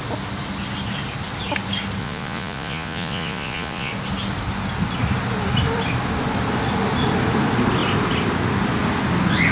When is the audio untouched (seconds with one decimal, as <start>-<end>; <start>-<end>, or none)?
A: 0.0-2.0; 3.9-9.5